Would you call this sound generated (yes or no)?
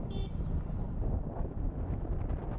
no